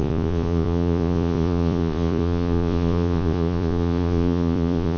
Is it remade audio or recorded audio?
remade